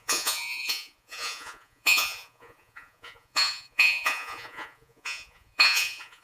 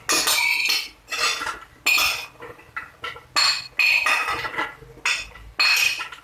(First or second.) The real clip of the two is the second